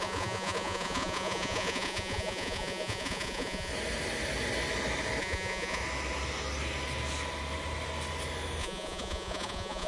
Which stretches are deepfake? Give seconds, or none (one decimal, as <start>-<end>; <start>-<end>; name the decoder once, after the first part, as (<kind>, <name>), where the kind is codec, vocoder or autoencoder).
0.0-3.7 (vocoder, Vocos); 5.2-5.8; 8.6-9.9